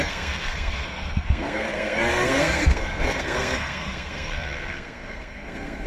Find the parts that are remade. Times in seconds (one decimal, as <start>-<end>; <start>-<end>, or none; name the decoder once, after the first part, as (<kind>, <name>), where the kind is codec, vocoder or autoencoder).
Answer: 0.0-5.9 (codec, SNAC)